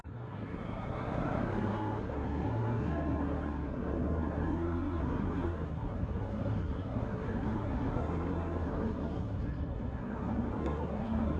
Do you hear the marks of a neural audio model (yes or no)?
yes